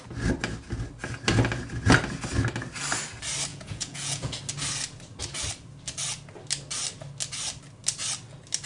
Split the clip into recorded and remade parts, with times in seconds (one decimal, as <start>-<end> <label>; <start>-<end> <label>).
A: 0.0-3.5 recorded; 3.5-4.4 remade; 4.4-8.7 recorded